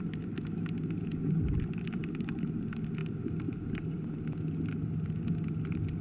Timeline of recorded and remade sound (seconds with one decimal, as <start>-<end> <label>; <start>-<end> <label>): 0.0-6.0 recorded